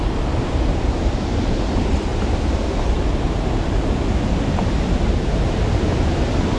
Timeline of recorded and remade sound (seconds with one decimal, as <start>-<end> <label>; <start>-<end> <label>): 0.0-6.6 recorded